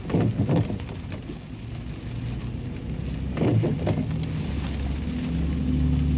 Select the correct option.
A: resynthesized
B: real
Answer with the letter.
B